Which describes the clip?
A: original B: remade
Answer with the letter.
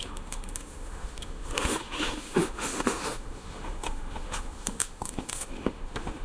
B